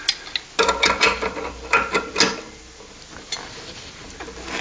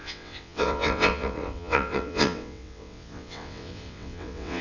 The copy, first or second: second